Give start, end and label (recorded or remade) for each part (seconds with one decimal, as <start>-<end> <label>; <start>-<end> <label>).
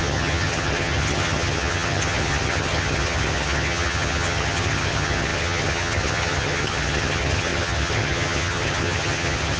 0.0-9.6 remade